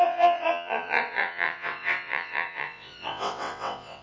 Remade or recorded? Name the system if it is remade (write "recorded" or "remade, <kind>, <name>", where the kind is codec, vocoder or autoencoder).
remade, vocoder, WaveNeXt